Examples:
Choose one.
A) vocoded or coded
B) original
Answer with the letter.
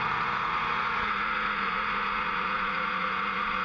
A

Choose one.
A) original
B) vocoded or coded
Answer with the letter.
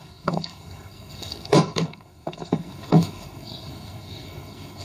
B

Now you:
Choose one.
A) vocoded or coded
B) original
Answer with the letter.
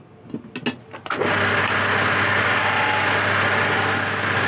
B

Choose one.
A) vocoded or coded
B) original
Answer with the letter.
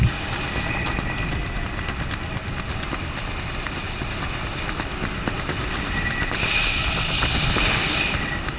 B